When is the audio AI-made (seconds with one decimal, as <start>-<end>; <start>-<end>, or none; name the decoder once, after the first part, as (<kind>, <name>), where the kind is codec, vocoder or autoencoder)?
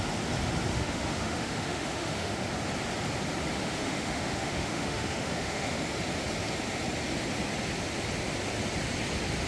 0.7-2.5 (autoencoder, DAC-VAE); 3.6-5.8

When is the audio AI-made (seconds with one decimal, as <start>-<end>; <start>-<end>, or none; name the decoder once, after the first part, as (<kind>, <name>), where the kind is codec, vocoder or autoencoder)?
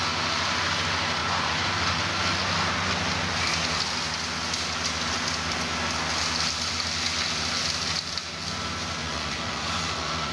1.2-2.1 (vocoder, Vocos); 9.0-10.3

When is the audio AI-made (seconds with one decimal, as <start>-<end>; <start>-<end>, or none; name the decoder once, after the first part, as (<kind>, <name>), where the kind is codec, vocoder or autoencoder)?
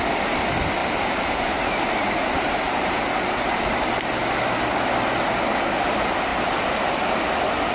0.8-3.0 (vocoder, BigVGAN v2)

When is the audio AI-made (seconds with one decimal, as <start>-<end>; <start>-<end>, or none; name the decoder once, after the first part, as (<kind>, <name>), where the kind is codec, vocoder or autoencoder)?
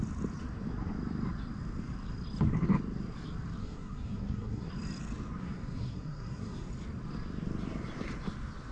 3.6-4.7 (codec, SNAC); 5.4-6.7